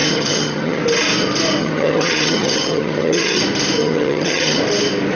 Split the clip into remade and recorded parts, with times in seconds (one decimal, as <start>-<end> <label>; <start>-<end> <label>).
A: 0.0-0.8 remade; 0.8-1.6 recorded; 1.6-3.4 remade; 3.4-3.8 recorded; 3.8-4.6 remade; 4.6-5.1 recorded